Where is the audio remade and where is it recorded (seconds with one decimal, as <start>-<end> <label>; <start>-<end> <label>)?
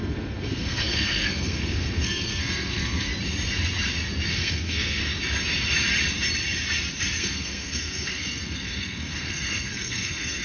0.0-3.1 remade; 3.1-4.3 recorded; 4.3-5.0 remade; 5.0-7.2 recorded; 7.2-10.4 remade